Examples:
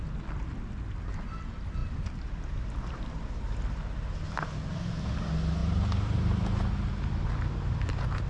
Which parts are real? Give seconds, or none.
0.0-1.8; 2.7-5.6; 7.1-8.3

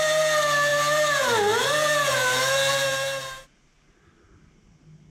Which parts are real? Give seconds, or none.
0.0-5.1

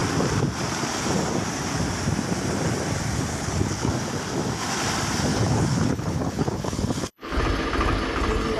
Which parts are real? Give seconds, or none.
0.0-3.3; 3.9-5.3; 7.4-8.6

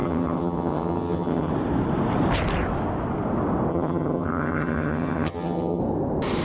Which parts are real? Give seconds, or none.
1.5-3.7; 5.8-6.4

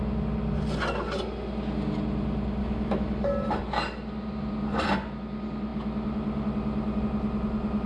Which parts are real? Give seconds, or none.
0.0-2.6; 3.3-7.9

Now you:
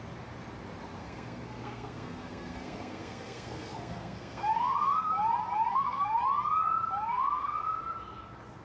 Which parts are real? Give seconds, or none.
0.0-1.0; 5.1-5.7; 6.2-7.1; 7.8-8.6

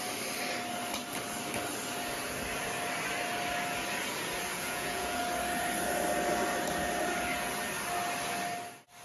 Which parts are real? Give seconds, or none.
0.0-4.5; 5.2-9.0

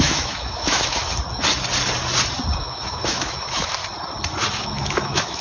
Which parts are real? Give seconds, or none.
1.0-2.6; 3.8-4.5